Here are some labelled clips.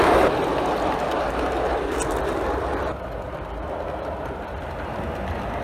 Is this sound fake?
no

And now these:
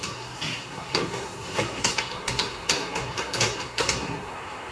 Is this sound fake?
yes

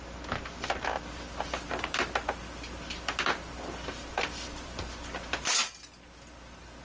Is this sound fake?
no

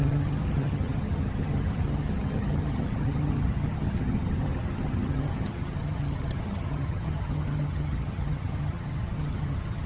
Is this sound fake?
yes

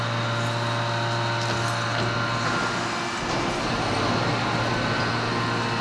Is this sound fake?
no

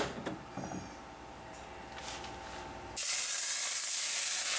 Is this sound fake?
no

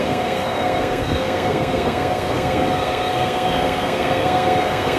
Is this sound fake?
yes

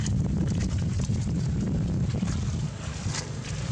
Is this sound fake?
no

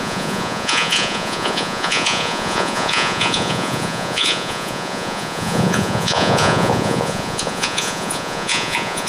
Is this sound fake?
yes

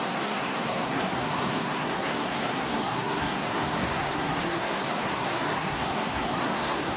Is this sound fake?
yes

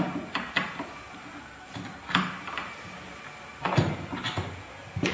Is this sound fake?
no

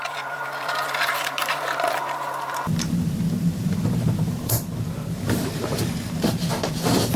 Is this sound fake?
yes